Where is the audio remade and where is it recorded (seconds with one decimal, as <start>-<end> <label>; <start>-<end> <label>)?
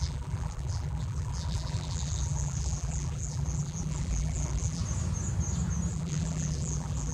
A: 0.0-4.8 remade; 4.8-5.9 recorded; 5.9-7.1 remade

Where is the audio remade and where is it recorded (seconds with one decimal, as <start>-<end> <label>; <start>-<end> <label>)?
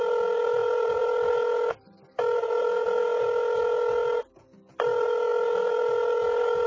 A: 0.0-0.6 recorded; 0.6-1.3 remade; 1.3-6.7 recorded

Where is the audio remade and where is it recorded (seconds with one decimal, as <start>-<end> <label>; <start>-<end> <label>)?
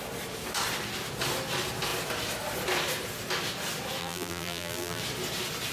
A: 0.0-4.0 recorded; 4.0-5.0 remade; 5.0-5.7 recorded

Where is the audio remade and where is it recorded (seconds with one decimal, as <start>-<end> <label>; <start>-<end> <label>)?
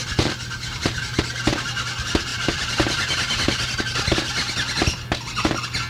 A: 0.0-2.3 recorded; 2.3-3.8 remade; 3.8-5.9 recorded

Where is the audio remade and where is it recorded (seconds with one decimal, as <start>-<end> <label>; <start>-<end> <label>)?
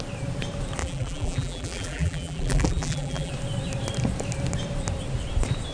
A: 0.0-0.8 recorded; 0.8-3.3 remade; 3.3-5.7 recorded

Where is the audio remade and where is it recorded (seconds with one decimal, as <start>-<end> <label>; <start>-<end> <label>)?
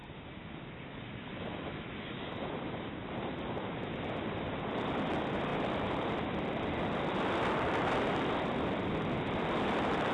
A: 0.0-3.9 recorded; 3.9-10.1 remade